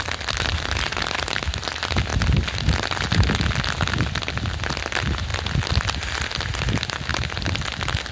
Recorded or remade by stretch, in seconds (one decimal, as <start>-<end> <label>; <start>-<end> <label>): 0.0-8.1 recorded